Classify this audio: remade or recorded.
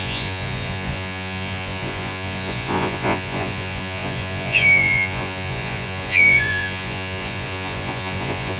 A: remade